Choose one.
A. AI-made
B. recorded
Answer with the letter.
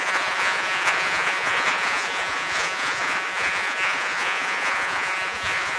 A